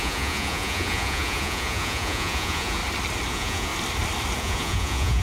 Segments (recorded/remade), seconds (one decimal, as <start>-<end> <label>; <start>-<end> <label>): 0.0-2.8 remade; 2.8-3.3 recorded; 3.3-3.7 remade; 3.7-4.4 recorded; 4.4-5.2 remade